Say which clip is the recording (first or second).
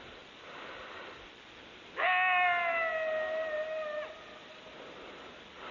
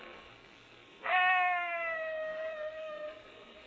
first